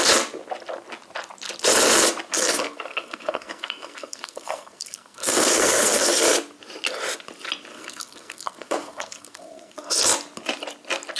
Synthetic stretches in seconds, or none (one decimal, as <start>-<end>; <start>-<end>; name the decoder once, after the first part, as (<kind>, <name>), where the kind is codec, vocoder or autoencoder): 2.3-6.1 (codec, SNAC); 7.7-10.0